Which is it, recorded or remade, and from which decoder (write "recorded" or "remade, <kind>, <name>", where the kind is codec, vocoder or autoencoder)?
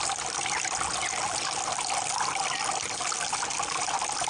recorded